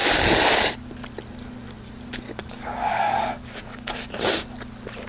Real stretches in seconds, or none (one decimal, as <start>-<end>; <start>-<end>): 0.0-2.4; 4.1-5.1